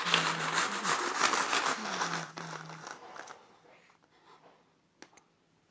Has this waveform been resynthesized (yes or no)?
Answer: no